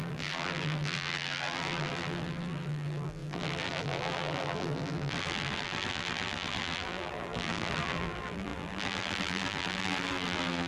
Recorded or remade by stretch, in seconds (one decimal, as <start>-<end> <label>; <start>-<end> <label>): 0.0-10.7 remade